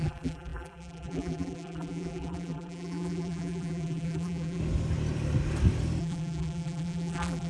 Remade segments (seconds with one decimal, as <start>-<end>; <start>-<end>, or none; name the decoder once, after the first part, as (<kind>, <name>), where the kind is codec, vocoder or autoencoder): 0.0-4.6 (vocoder, BigVGAN v2); 6.0-7.5